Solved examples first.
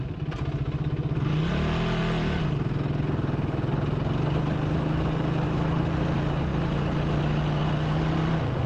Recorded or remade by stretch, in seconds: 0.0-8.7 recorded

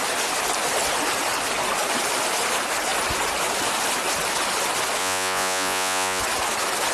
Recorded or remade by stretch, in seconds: 0.0-5.0 recorded; 5.0-6.2 remade; 6.2-6.9 recorded

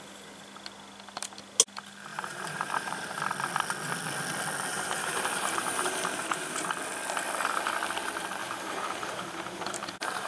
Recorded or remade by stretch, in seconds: 0.0-2.1 recorded; 2.1-3.2 remade; 3.2-4.7 recorded; 4.7-6.7 remade; 6.7-8.4 recorded; 8.4-10.3 remade

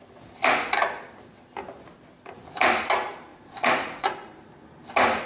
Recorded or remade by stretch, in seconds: 0.0-3.3 recorded; 3.3-4.1 remade; 4.1-5.3 recorded

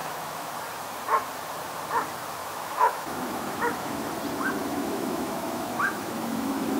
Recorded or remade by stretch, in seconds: 0.0-0.5 remade; 0.5-2.4 recorded; 2.4-4.1 remade; 4.1-4.6 recorded; 4.6-6.8 remade

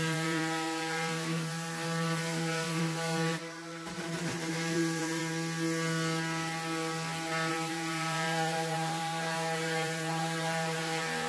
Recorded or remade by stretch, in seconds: 0.0-5.2 remade; 5.2-7.5 recorded; 7.5-11.3 remade